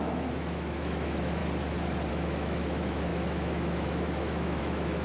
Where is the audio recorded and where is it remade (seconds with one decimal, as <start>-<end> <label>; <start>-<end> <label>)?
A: 0.0-1.4 remade; 1.4-2.1 recorded; 2.1-5.0 remade